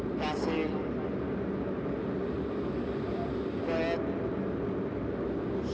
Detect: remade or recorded recorded